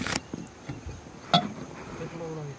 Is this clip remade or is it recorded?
recorded